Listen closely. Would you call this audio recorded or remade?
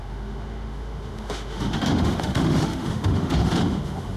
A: remade